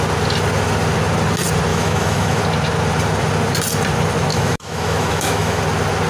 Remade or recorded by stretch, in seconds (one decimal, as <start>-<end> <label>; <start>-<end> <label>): 0.0-1.7 recorded; 1.7-2.4 remade; 2.4-4.3 recorded; 4.3-5.6 remade; 5.6-6.1 recorded

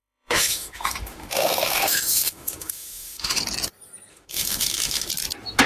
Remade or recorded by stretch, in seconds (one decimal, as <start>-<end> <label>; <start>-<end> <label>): 0.0-3.4 remade; 3.4-4.1 recorded; 4.1-5.1 remade; 5.1-5.7 recorded

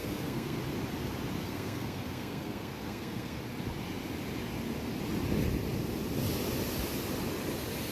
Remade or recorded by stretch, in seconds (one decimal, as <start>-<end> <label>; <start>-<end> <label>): 0.0-0.6 remade; 0.6-1.4 recorded; 1.4-3.4 remade; 3.4-7.9 recorded

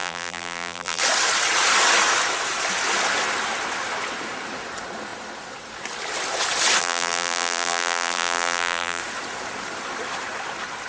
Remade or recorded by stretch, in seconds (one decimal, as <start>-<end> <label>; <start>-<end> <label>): 0.0-1.0 remade; 1.0-6.8 recorded; 6.8-9.0 remade; 9.0-10.9 recorded

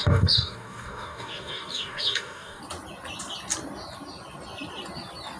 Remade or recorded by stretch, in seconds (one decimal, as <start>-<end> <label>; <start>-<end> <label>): 0.0-2.6 remade; 2.6-5.4 recorded

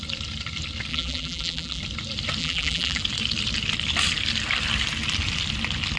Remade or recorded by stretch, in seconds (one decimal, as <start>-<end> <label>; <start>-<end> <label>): 0.0-0.9 recorded; 0.9-1.8 remade; 1.8-2.4 recorded; 2.4-3.0 remade; 3.0-6.0 recorded

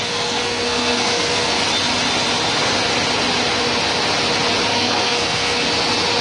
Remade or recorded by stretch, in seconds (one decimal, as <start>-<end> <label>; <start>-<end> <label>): 0.0-1.6 remade; 1.6-4.7 recorded; 4.7-5.7 remade; 5.7-6.2 recorded